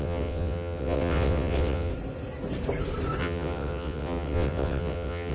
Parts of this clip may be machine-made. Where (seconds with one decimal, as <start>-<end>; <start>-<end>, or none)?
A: 0.0-1.9; 3.2-5.3